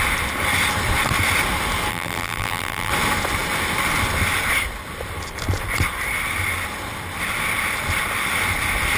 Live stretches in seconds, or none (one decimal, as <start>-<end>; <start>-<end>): 0.0-1.9; 2.9-9.0